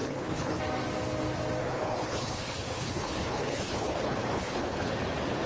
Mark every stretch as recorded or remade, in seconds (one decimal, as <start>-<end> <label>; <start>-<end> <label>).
0.0-0.6 remade; 0.6-1.6 recorded; 1.6-4.9 remade; 4.9-5.5 recorded